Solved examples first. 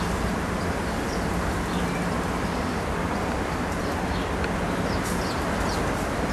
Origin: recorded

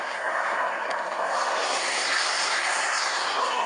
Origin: remade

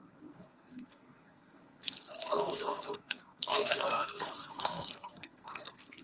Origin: remade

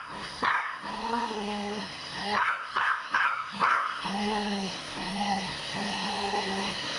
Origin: remade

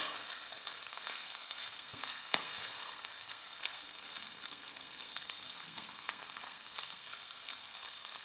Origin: remade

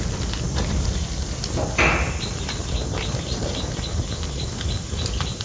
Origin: recorded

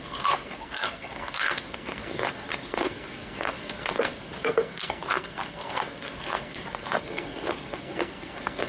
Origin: remade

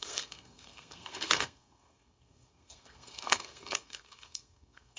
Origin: remade